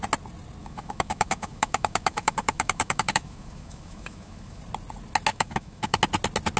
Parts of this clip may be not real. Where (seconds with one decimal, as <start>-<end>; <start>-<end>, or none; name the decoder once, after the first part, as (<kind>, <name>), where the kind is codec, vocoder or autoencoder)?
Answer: 0.6-4.6 (autoencoder, DAC-VAE); 5.3-6.0